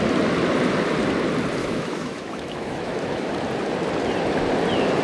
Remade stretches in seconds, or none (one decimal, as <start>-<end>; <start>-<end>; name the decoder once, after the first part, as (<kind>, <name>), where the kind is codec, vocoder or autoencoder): 1.6-3.3 (autoencoder, DAC-VAE)